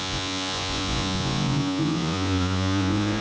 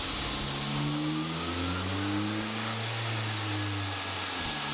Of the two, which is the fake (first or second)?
first